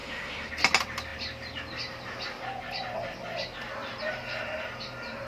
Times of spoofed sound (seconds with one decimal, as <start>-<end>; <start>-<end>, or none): 0.0-0.5